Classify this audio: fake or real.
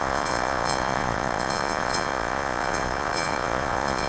fake